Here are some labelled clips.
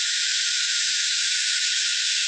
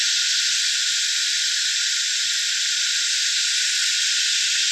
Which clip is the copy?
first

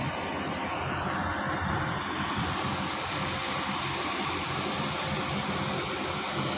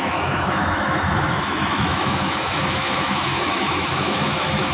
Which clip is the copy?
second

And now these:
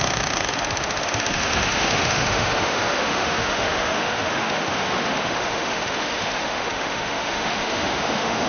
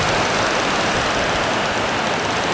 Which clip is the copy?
first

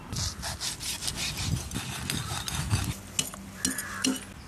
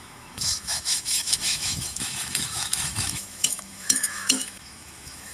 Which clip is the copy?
second